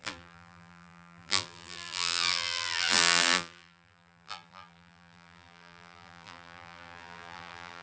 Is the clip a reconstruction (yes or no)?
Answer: yes